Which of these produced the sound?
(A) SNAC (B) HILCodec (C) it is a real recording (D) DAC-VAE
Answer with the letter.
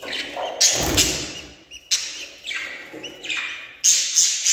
C